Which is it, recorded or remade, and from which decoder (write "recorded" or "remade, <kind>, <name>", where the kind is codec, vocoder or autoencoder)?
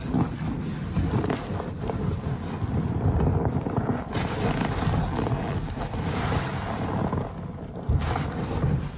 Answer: recorded